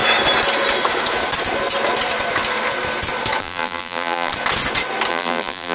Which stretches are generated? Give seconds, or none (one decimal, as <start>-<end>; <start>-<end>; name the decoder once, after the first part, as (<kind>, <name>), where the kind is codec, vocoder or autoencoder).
3.4-4.3 (vocoder, BigVGAN v2); 5.1-5.7

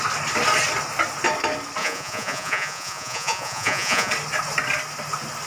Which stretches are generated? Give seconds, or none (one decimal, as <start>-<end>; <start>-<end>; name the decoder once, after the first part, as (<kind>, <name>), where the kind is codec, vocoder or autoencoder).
1.8-4.1 (vocoder, Vocos)

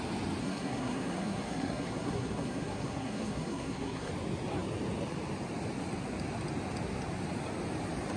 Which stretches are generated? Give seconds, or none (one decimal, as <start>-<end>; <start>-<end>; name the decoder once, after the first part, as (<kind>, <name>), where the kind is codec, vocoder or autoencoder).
0.4-4.1 (codec, SNAC)

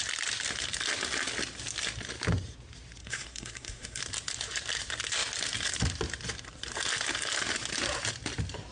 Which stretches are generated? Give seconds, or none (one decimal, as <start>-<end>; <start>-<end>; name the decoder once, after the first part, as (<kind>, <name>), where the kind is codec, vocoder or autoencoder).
3.0-4.0 (codec, SNAC)

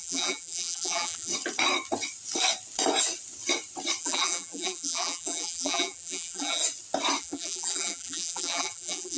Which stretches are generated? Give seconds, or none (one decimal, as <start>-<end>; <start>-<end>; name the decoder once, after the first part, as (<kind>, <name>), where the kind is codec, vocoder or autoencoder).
0.0-1.3 (vocoder, BigVGAN v2); 4.0-6.6; 7.2-9.2

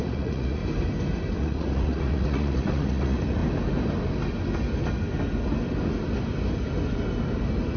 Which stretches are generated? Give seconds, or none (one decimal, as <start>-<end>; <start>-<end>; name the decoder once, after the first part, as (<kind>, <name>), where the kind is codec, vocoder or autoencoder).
0.0-0.6 (vocoder, Vocos); 1.4-3.4